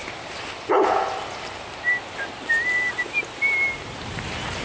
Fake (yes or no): no